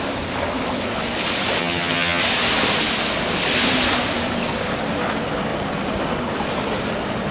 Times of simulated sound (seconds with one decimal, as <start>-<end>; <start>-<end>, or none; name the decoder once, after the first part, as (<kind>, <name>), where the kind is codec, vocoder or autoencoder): 1.6-2.2 (vocoder, HiFi-GAN)